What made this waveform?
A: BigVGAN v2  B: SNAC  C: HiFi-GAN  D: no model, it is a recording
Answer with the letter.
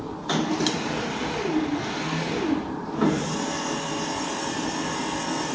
D